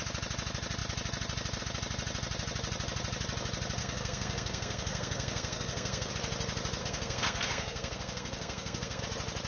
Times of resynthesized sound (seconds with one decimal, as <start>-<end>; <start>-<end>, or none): 3.8-6.1; 6.8-9.0